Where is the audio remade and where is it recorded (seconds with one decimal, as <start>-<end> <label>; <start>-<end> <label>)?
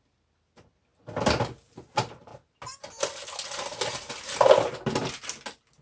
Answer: 0.0-5.8 recorded